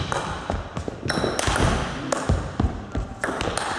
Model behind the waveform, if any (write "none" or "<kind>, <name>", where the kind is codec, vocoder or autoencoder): none